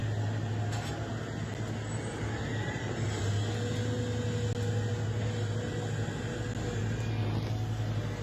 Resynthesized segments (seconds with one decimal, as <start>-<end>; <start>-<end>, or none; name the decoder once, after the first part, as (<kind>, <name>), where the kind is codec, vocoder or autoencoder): 2.5-3.2 (vocoder, BigVGAN v2)